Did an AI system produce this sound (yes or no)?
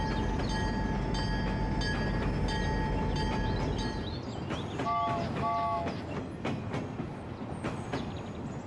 no